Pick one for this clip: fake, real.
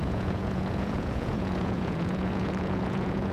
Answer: fake